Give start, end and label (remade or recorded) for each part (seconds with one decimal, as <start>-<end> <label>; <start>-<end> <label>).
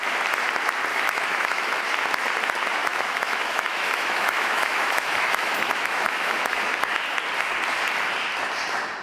0.0-0.9 recorded; 0.9-1.8 remade; 1.8-2.8 recorded; 2.8-6.6 remade; 6.6-9.0 recorded